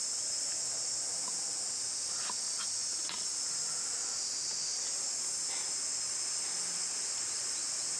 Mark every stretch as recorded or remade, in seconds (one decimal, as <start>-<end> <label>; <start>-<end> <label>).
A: 0.0-8.0 recorded